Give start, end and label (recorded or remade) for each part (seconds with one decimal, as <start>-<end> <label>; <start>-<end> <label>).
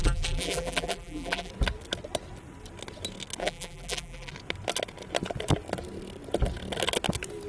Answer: 0.0-1.5 remade; 1.5-3.4 recorded; 3.4-4.3 remade; 4.3-7.5 recorded